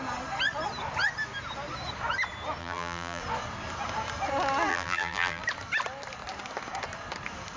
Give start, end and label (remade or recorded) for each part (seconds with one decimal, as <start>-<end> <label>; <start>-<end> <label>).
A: 0.0-2.6 recorded; 2.6-3.2 remade; 3.2-4.7 recorded; 4.7-5.4 remade; 5.4-7.6 recorded